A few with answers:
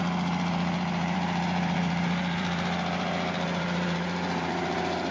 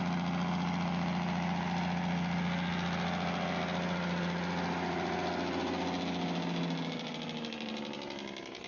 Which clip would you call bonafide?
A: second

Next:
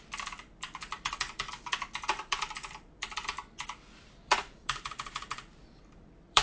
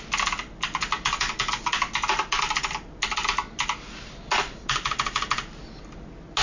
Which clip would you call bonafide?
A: second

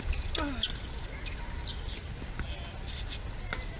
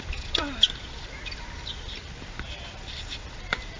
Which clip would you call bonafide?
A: first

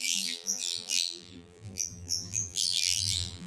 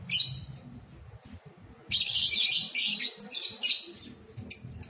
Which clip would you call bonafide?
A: second